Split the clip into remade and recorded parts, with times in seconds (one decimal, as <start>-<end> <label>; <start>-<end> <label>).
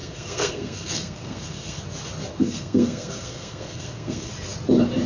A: 0.0-1.8 remade; 1.8-2.3 recorded; 2.3-4.3 remade; 4.3-5.1 recorded